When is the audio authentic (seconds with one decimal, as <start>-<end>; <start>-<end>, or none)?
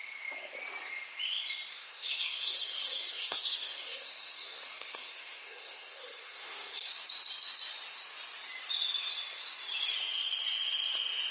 0.0-1.7; 6.9-11.3